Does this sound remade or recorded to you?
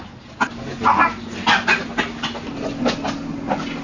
recorded